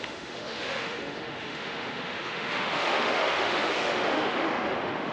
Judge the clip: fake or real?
fake